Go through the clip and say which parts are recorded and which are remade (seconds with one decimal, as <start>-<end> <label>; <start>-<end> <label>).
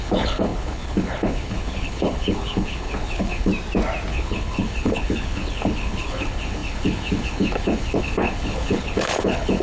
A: 0.0-3.5 remade; 3.5-4.1 recorded; 4.1-9.6 remade